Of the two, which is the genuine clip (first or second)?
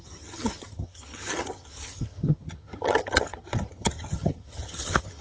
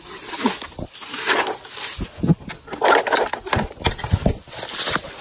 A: second